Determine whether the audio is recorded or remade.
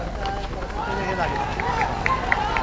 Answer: recorded